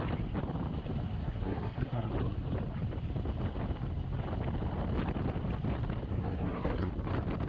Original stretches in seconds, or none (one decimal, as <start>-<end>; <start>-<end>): 0.0-1.2; 2.1-6.1; 6.9-7.5